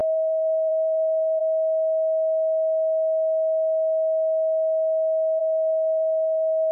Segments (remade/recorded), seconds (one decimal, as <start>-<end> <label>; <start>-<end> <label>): 0.0-1.4 remade; 1.4-5.4 recorded; 5.4-6.7 remade